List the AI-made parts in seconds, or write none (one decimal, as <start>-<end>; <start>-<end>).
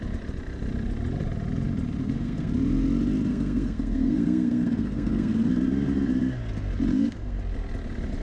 2.0-2.5; 3.3-5.5; 6.9-7.4